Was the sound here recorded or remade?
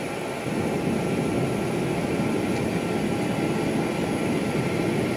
recorded